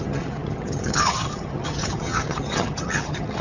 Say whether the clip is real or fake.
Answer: fake